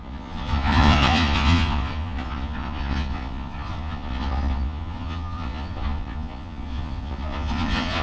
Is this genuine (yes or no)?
no